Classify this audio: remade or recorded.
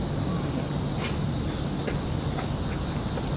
recorded